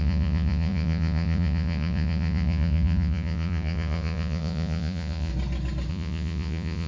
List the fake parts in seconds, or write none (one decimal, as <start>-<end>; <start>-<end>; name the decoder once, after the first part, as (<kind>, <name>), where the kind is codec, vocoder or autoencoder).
0.0-5.3 (vocoder, Vocos); 5.9-6.9